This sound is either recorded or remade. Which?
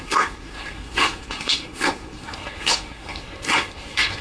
remade